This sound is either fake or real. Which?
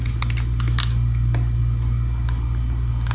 real